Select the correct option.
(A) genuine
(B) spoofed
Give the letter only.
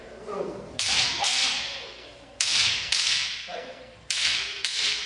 B